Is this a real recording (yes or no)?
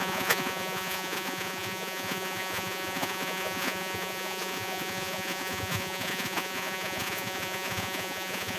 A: no